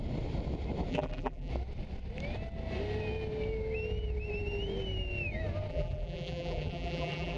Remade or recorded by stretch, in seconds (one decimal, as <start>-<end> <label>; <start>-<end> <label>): 0.0-0.9 recorded; 0.9-1.5 remade; 1.5-5.7 recorded; 5.7-7.4 remade